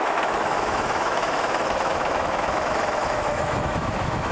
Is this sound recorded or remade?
remade